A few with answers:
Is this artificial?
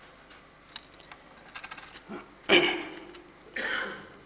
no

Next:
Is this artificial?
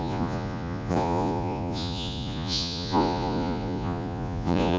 yes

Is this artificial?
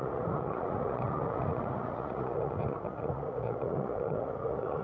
yes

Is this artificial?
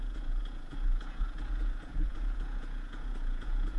yes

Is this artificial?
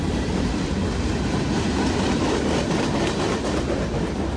no